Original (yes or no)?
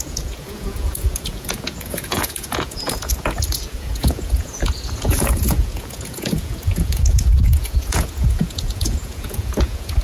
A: no